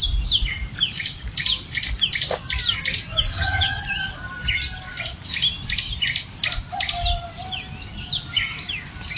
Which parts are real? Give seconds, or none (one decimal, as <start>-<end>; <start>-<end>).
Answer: 0.0-3.3; 3.8-9.2